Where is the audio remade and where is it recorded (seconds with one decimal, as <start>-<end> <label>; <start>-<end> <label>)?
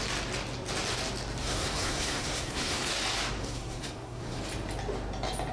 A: 0.0-1.4 recorded; 1.4-2.9 remade; 2.9-3.4 recorded; 3.4-4.4 remade; 4.4-5.5 recorded